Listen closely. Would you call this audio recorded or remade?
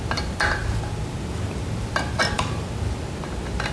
recorded